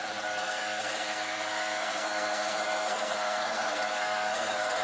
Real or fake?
fake